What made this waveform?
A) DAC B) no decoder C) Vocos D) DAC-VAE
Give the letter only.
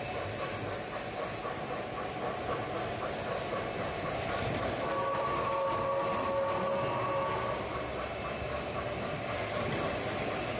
B